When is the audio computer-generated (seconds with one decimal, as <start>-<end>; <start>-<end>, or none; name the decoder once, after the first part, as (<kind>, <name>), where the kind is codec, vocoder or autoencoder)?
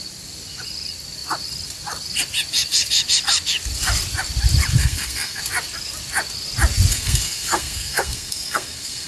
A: 4.8-5.4 (codec, SNAC); 6.9-9.1